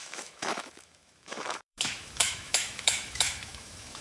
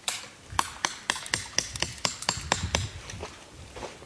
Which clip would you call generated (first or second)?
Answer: first